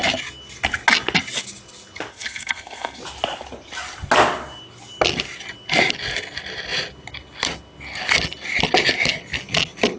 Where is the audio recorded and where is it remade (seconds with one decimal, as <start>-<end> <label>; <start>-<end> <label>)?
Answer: 0.0-2.1 recorded; 2.1-3.0 remade; 3.0-10.0 recorded